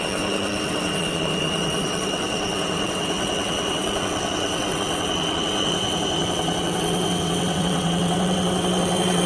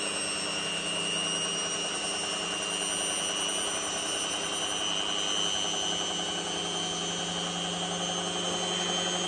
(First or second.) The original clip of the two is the second